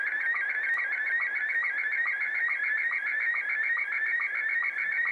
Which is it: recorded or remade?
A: recorded